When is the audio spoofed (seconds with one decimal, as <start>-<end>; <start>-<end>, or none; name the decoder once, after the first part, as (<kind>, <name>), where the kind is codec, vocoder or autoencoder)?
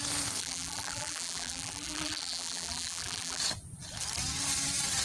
0.4-3.4 (vocoder, BigVGAN v2)